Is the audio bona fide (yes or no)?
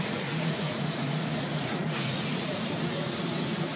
no